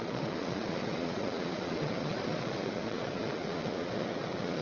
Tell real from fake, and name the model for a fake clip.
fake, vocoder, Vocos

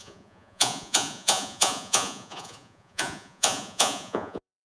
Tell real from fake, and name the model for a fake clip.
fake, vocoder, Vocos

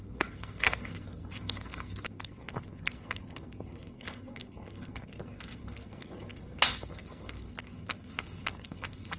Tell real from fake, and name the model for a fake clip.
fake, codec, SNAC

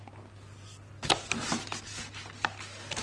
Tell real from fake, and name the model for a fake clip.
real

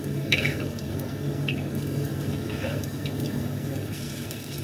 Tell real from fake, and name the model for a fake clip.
fake, codec, SNAC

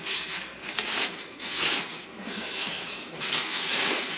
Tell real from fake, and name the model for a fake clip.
fake, codec, SNAC